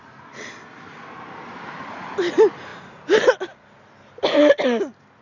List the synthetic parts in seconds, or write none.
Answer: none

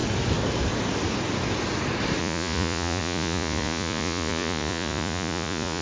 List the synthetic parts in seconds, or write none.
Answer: 2.2-5.8 (vocoder, Vocos)

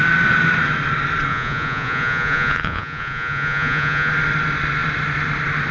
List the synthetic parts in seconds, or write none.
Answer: 1.3-4.1 (vocoder, Vocos)

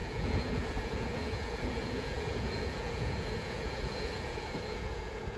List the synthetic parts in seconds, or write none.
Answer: 0.0-5.4 (vocoder, Vocos)

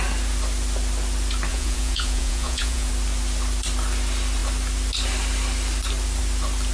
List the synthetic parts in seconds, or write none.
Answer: 1.5-2.9 (vocoder, Vocos)

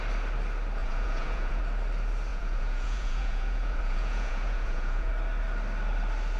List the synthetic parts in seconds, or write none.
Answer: 0.8-1.6 (vocoder, Vocos); 2.3-5.1